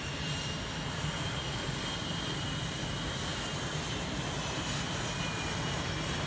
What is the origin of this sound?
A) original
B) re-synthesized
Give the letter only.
A